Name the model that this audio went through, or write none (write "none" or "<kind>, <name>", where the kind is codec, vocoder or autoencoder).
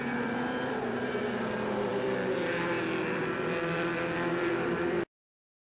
vocoder, BigVGAN v2